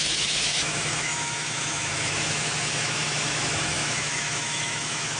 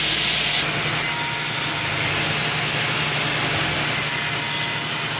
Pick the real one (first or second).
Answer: second